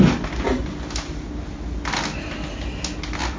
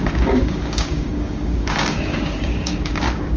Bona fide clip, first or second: first